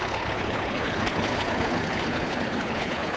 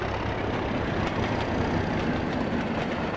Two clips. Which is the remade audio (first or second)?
first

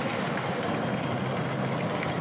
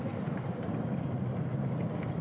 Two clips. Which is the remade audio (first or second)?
second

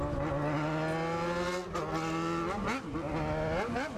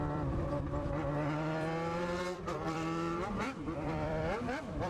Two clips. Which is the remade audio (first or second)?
second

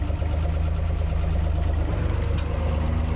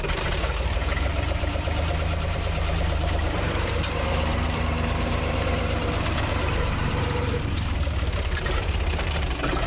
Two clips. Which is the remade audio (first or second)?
second